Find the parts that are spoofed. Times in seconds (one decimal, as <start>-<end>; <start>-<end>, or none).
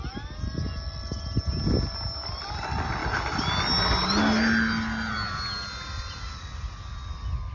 none